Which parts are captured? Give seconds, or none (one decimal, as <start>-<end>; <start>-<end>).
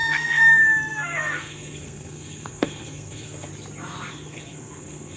3.5-4.1